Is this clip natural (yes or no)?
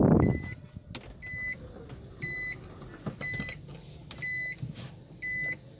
yes